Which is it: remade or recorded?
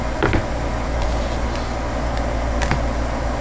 recorded